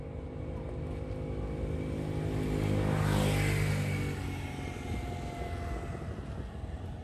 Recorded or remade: recorded